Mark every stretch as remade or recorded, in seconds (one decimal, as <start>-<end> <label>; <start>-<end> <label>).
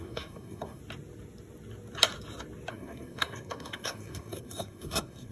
0.0-0.8 remade; 0.8-2.7 recorded; 2.7-5.3 remade